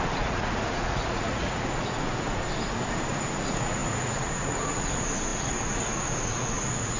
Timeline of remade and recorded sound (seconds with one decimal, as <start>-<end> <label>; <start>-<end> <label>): 0.0-2.4 remade; 2.4-3.1 recorded; 3.1-7.0 remade